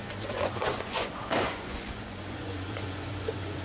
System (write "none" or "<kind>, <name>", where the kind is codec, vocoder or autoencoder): vocoder, Vocos